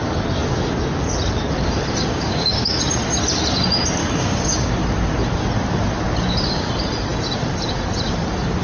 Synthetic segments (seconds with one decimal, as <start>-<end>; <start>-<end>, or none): 2.1-2.8; 4.0-4.7